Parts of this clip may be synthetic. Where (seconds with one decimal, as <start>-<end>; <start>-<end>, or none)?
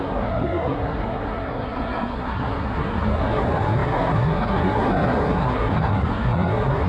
0.0-6.9